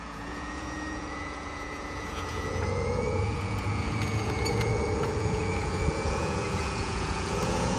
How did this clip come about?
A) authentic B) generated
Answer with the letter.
B